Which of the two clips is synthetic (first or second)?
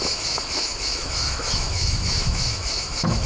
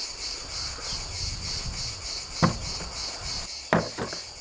first